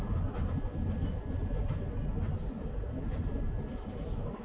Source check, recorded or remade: recorded